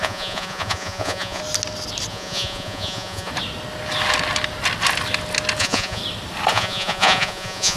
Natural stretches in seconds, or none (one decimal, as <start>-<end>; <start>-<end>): 1.4-2.1; 3.3-5.6; 6.0-6.5